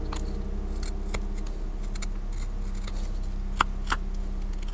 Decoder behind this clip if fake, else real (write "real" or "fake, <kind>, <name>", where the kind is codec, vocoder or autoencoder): real